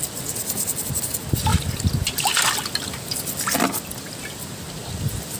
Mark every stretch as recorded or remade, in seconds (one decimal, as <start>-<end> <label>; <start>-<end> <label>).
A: 0.0-5.4 recorded